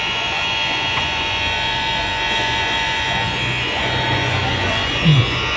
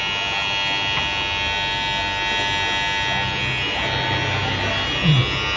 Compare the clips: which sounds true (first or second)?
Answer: second